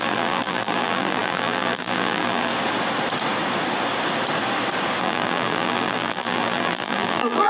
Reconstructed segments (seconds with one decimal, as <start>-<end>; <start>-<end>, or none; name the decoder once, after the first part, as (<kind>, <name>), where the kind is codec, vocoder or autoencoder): 0.0-2.5 (vocoder, BigVGAN v2); 5.0-7.5